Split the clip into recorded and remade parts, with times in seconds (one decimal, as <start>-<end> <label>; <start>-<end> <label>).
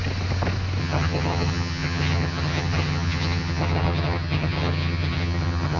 0.0-0.8 recorded; 0.8-5.8 remade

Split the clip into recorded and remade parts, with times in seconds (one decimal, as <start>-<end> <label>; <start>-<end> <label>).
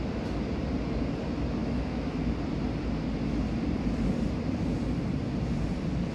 0.0-1.6 recorded; 1.6-2.3 remade; 2.3-6.1 recorded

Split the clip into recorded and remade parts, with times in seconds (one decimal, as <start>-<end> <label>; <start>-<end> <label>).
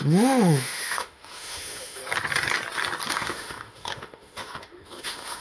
0.0-2.0 remade; 2.0-3.1 recorded; 3.1-5.4 remade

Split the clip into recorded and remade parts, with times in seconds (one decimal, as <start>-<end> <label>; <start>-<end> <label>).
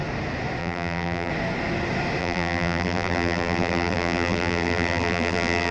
0.0-0.6 recorded; 0.6-1.3 remade; 1.3-2.2 recorded; 2.2-5.7 remade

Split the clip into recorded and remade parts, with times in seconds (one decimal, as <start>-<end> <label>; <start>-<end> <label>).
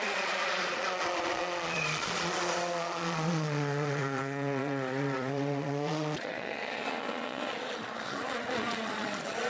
0.0-9.5 remade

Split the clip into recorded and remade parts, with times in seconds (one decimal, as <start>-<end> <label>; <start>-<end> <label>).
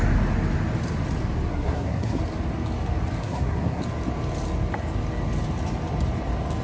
0.0-1.5 recorded; 1.5-2.2 remade; 2.2-3.2 recorded; 3.2-3.8 remade; 3.8-6.6 recorded